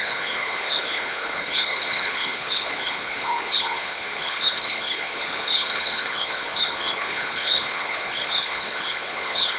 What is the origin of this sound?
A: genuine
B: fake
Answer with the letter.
B